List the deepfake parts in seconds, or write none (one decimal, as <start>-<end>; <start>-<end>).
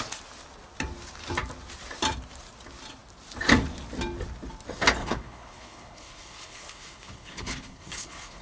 5.0-8.4